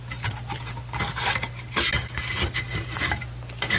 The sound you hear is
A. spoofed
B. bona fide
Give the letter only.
B